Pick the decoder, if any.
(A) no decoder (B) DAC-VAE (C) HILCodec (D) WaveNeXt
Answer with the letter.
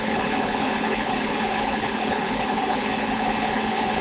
C